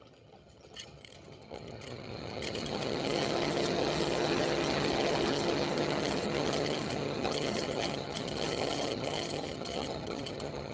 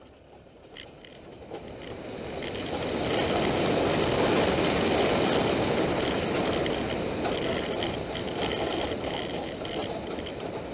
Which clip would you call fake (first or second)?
first